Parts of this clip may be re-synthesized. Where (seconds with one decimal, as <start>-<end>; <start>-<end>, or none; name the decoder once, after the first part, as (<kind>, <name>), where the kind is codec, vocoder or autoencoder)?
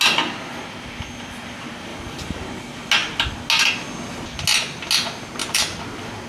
1.9-2.6 (vocoder, BigVGAN v2); 5.4-6.3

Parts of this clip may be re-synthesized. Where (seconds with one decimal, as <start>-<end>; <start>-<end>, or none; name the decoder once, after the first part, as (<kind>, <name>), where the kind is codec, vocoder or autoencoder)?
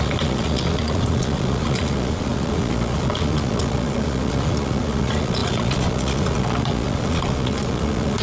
0.0-8.2 (vocoder, Vocos)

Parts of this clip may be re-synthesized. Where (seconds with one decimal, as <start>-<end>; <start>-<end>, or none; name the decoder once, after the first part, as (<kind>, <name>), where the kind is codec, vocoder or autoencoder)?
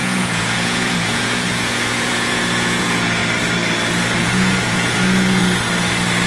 0.0-3.2 (vocoder, Vocos); 4.2-5.4